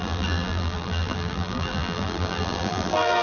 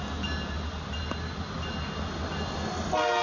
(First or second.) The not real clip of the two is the first